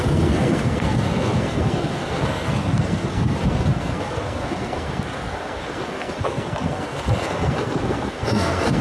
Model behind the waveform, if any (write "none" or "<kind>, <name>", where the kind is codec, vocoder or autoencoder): codec, SNAC